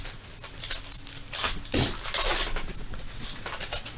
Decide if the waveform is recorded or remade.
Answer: recorded